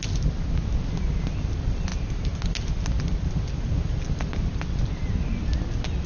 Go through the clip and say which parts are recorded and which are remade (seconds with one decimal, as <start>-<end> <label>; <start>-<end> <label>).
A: 0.0-6.1 recorded